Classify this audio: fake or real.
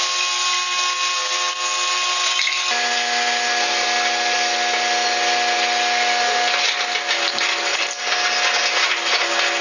real